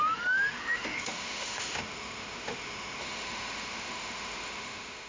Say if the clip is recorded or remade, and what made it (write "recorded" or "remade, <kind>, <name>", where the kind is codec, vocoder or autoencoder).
remade, autoencoder, DAC-VAE